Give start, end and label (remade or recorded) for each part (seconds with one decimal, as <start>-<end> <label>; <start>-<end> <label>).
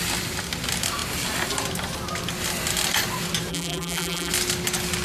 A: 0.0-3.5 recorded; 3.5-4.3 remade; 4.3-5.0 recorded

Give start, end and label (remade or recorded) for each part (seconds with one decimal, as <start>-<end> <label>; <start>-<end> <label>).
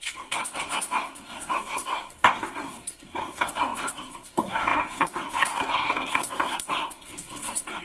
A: 0.0-7.8 remade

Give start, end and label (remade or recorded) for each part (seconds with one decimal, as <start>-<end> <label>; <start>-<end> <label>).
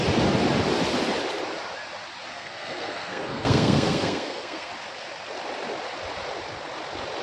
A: 0.0-2.3 recorded; 2.3-4.7 remade; 4.7-7.2 recorded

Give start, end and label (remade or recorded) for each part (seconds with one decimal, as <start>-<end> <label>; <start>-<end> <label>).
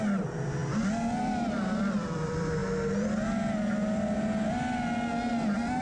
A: 0.0-0.6 remade; 0.6-1.2 recorded; 1.2-2.6 remade; 2.6-5.8 recorded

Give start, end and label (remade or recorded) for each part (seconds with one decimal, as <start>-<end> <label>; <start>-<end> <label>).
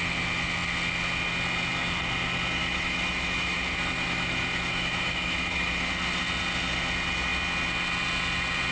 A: 0.0-2.6 recorded; 2.6-5.9 remade; 5.9-8.7 recorded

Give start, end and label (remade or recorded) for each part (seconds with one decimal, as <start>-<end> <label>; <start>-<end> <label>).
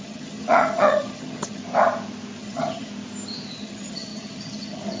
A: 0.0-1.6 remade; 1.6-2.4 recorded; 2.4-2.9 remade; 2.9-3.5 recorded; 3.5-5.0 remade